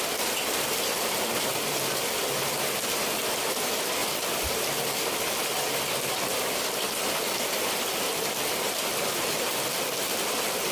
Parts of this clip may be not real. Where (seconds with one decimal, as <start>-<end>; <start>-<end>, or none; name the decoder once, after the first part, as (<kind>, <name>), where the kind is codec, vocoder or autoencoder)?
none

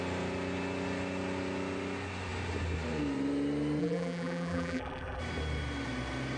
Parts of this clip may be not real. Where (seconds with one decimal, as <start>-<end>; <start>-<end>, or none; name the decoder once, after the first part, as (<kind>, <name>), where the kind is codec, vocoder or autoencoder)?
3.8-5.2 (vocoder, BigVGAN v2)

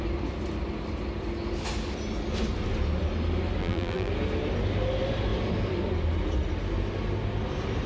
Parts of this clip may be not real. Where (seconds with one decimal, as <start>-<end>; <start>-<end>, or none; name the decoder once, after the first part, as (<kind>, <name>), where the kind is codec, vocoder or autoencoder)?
3.6-4.1 (vocoder, BigVGAN v2)

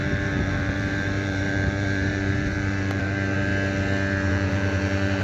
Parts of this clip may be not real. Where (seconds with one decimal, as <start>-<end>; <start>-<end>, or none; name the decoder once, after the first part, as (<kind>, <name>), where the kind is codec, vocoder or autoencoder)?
0.0-3.5 (vocoder, BigVGAN v2); 4.3-5.2

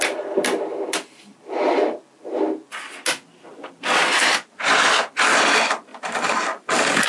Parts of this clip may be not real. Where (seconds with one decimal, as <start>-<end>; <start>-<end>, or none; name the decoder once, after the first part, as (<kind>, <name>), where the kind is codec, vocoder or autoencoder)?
5.9-7.1 (vocoder, BigVGAN v2)

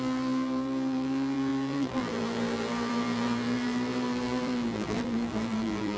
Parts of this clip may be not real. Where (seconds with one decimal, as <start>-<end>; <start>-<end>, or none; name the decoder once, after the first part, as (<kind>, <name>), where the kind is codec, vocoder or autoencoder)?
0.0-6.0 (vocoder, BigVGAN v2)

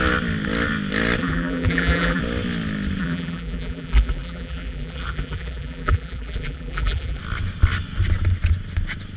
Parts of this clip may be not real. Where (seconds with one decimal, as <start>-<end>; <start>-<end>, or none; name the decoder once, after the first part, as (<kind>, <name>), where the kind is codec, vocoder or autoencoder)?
1.2-2.2 (vocoder, BigVGAN v2); 3.0-7.2

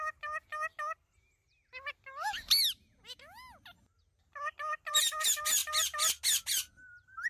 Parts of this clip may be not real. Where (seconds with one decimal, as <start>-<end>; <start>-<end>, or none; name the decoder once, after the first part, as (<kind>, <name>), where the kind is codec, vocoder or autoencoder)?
none